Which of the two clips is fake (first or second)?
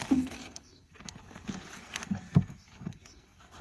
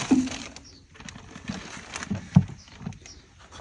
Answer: first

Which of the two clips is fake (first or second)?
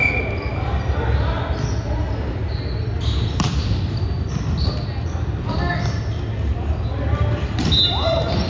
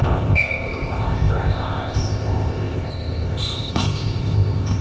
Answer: second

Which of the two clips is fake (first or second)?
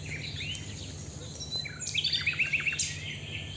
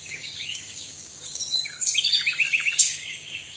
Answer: second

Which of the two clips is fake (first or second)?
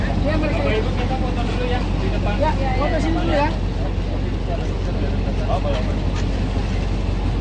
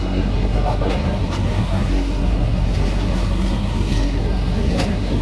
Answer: second